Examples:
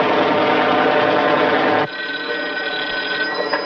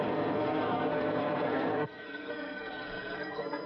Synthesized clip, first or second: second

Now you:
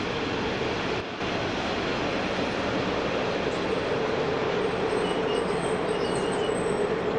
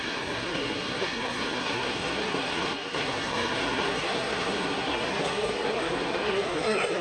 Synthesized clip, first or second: second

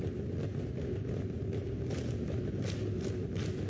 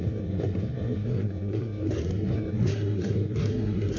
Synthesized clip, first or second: second